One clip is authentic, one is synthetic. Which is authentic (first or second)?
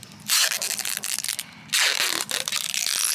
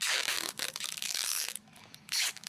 first